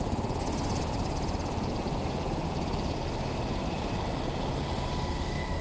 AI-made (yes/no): no